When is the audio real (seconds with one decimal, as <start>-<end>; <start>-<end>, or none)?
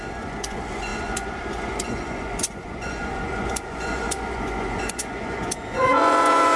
none